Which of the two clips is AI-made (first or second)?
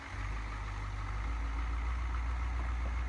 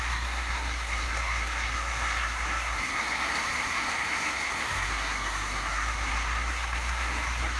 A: second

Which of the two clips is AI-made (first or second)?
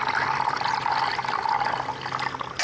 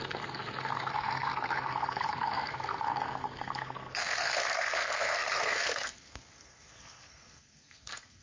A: second